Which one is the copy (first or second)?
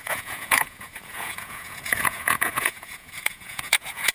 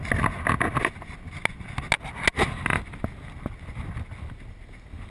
first